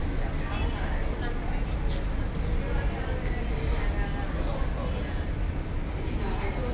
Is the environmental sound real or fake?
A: real